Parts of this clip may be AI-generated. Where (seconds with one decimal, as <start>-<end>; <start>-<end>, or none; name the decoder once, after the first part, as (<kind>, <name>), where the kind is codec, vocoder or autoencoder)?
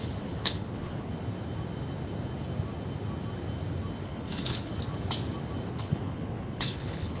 0.0-1.1 (codec, HILCodec); 4.0-4.7; 5.7-7.2